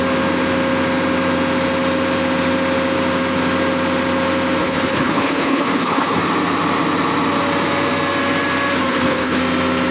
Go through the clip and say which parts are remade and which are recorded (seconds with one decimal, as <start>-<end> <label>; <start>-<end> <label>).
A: 0.0-4.6 recorded; 4.6-6.2 remade; 6.2-8.9 recorded; 8.9-9.4 remade; 9.4-9.9 recorded